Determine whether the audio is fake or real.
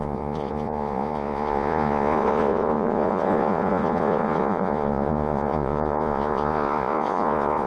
fake